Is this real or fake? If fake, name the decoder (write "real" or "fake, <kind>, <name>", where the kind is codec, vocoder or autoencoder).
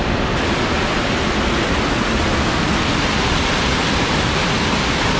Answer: real